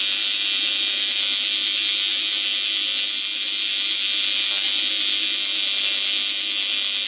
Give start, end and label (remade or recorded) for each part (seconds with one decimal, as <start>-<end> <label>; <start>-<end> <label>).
0.0-7.1 recorded